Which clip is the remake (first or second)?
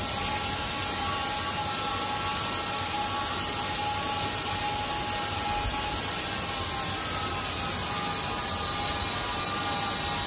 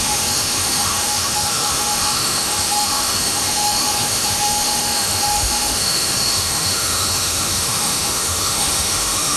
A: second